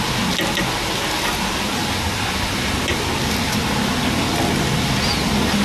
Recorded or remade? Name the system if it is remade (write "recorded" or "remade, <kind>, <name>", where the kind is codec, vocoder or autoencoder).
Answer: recorded